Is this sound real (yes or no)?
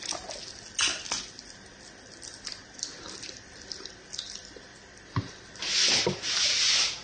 yes